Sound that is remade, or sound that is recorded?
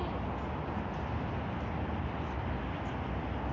recorded